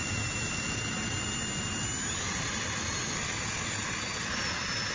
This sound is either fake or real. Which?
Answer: real